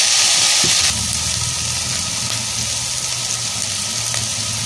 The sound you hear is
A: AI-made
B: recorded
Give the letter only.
B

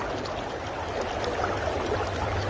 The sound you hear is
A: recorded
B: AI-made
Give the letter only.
A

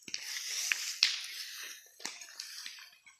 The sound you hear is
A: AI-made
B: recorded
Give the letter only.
B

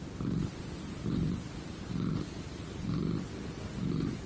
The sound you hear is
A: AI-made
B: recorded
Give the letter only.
B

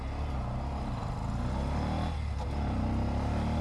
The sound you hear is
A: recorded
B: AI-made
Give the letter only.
A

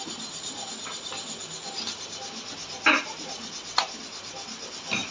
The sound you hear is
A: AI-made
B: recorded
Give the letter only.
B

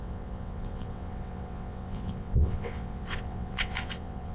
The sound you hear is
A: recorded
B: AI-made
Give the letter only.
B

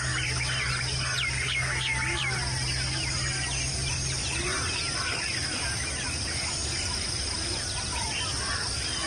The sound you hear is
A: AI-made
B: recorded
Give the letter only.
B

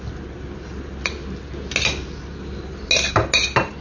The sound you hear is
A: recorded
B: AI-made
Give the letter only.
A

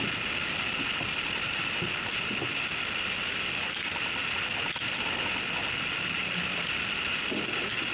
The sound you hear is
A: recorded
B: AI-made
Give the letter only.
A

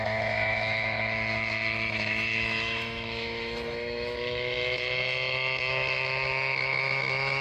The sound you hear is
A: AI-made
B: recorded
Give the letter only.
A